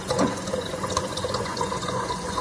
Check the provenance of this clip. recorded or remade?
remade